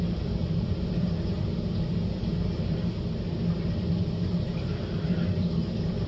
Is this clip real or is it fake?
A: real